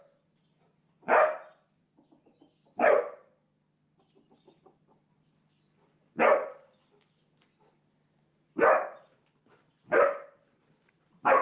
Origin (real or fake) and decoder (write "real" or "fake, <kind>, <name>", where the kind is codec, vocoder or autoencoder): real